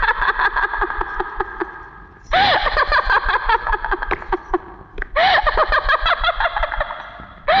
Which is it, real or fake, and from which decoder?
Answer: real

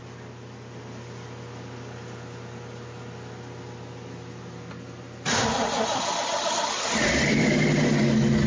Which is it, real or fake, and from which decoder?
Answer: real